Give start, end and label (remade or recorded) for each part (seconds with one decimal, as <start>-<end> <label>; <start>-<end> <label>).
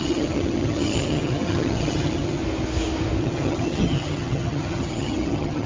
0.0-2.4 remade; 2.4-3.2 recorded; 3.2-5.7 remade